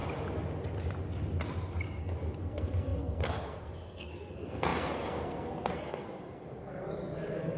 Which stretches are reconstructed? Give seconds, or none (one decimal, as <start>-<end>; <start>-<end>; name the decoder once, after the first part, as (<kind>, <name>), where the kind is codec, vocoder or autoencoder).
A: 2.0-7.6 (codec, SNAC)